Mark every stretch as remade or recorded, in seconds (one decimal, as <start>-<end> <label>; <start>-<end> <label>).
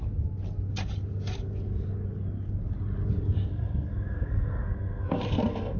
0.0-3.5 recorded; 3.5-5.8 remade